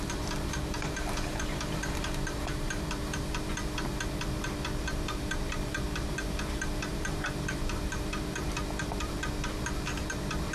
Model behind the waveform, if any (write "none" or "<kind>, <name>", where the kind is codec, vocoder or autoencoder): vocoder, BigVGAN v2